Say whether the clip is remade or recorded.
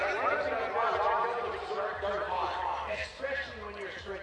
recorded